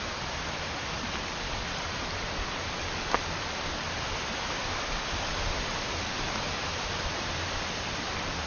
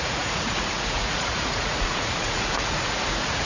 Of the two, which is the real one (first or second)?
first